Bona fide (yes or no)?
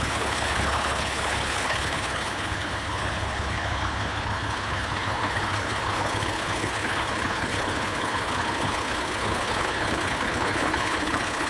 no